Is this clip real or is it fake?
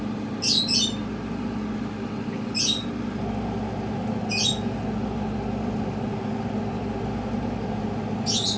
real